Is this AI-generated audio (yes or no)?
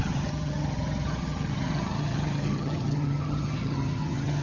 yes